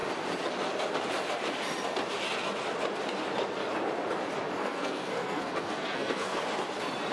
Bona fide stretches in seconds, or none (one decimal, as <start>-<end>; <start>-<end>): 0.0-4.6; 6.4-7.1